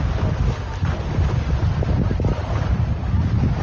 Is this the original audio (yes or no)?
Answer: yes